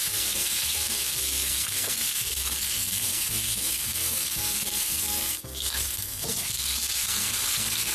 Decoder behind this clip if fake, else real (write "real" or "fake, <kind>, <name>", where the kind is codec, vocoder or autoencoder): fake, codec, SNAC